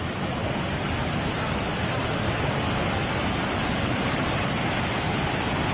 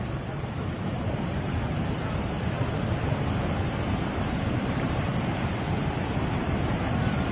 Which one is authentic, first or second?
first